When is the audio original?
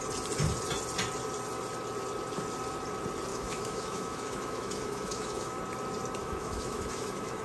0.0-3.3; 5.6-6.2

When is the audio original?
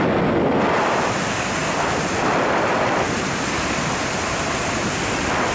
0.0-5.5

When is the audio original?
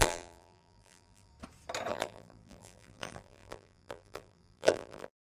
1.3-1.9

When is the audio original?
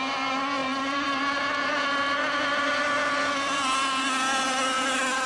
0.0-5.3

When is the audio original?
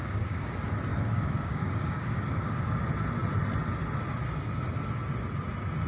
0.5-0.9; 2.8-5.9